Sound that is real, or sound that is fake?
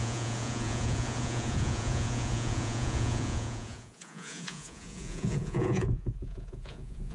fake